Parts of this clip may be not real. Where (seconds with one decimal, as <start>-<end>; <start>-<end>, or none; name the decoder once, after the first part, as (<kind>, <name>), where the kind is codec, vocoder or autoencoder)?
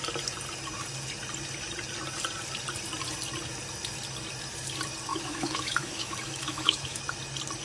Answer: 5.1-7.0 (autoencoder, DAC-VAE)